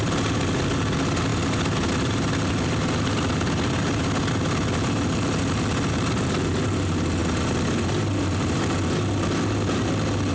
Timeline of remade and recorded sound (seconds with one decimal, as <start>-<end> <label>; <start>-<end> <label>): 0.0-10.3 recorded